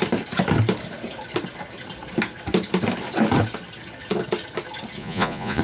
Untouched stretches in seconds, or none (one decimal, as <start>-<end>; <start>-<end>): 0.0-5.0